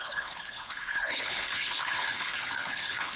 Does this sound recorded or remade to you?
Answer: remade